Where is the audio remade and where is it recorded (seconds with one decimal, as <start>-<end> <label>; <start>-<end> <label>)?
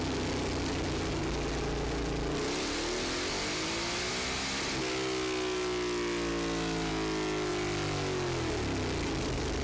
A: 0.0-9.6 recorded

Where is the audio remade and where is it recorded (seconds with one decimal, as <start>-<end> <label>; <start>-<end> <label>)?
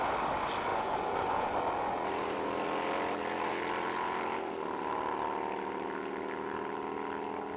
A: 0.0-0.7 recorded; 0.7-1.6 remade; 1.6-7.6 recorded